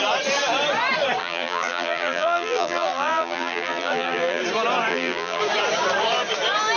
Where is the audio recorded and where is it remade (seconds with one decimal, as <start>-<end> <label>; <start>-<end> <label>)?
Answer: 0.0-1.2 recorded; 1.2-4.4 remade; 4.4-4.9 recorded; 4.9-5.4 remade; 5.4-6.8 recorded